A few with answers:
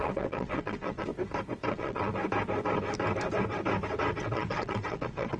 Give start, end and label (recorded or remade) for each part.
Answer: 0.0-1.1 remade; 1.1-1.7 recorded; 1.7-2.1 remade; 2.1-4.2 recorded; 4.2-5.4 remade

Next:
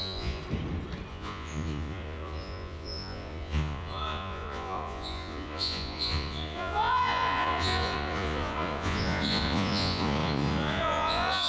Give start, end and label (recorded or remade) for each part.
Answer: 0.0-0.4 remade; 0.4-1.1 recorded; 1.1-11.5 remade

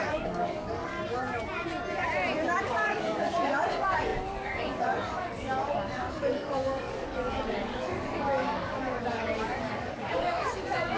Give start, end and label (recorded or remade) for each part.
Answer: 0.0-0.9 remade; 0.9-2.6 recorded; 2.6-11.0 remade